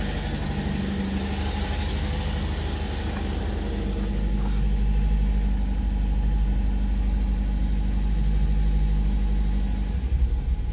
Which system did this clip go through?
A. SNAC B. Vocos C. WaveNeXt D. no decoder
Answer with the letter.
D